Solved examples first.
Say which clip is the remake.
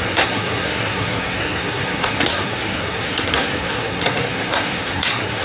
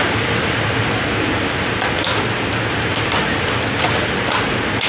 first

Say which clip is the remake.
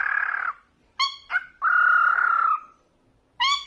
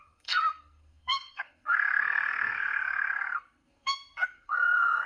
second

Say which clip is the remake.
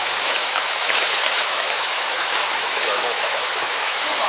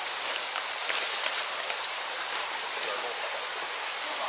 first